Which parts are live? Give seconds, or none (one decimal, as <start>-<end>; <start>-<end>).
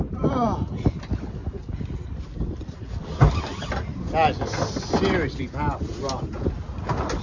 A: 0.0-7.2